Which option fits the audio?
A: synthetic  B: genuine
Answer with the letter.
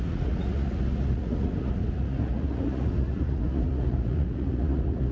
A